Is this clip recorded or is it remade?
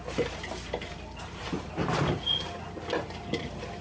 recorded